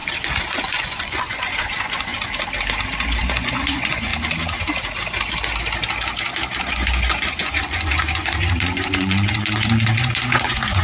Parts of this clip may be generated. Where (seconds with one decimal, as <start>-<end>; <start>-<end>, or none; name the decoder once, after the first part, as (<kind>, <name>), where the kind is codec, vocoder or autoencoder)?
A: 0.5-2.1 (vocoder, Vocos); 3.2-4.1; 6.7-10.8